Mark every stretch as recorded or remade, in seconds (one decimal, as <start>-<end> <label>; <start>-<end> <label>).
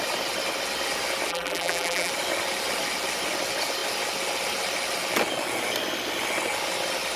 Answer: 0.0-1.3 recorded; 1.3-2.1 remade; 2.1-7.2 recorded